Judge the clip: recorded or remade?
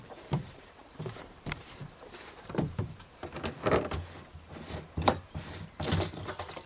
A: remade